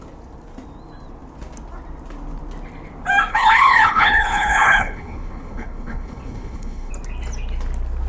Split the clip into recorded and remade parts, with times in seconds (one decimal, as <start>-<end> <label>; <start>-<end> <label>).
0.0-3.3 recorded; 3.3-6.9 remade; 6.9-8.1 recorded